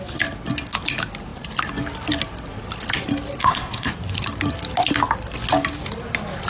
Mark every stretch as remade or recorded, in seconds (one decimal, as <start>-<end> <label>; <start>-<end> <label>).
0.0-3.4 recorded; 3.4-3.9 remade; 3.9-6.5 recorded